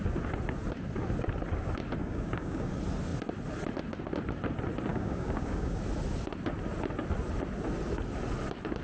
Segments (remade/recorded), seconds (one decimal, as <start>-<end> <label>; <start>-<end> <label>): 0.0-2.0 recorded; 2.0-2.7 remade; 2.7-4.9 recorded; 4.9-5.8 remade; 5.8-8.8 recorded